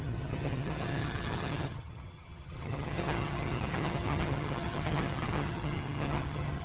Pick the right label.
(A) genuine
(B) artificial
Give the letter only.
B